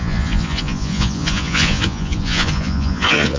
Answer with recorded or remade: remade